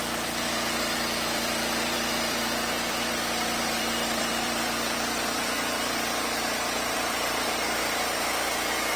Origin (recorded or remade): remade